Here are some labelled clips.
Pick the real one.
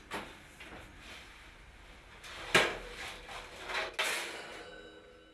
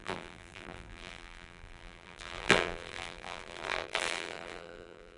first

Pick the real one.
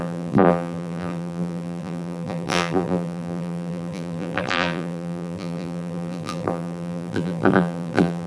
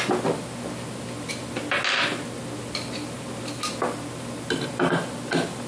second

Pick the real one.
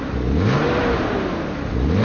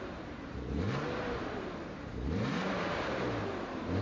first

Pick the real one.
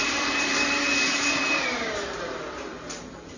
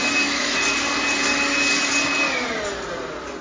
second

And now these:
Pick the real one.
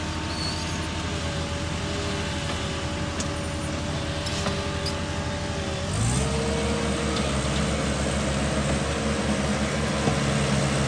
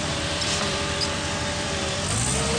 first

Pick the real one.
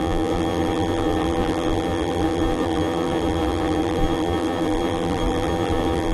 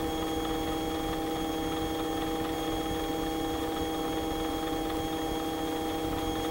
second